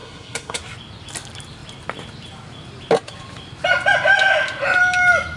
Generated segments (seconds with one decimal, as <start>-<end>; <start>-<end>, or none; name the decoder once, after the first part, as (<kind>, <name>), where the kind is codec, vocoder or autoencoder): 0.0-0.6 (codec, SNAC)